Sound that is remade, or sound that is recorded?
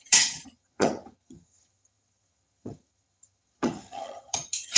remade